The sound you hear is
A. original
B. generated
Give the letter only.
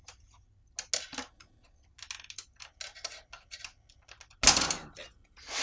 A